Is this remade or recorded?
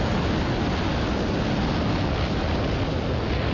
recorded